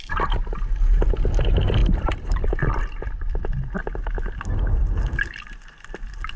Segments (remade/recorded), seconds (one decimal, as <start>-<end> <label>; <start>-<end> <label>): 0.0-1.8 recorded; 1.8-3.3 remade; 3.3-6.4 recorded